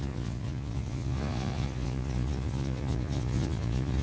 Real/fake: fake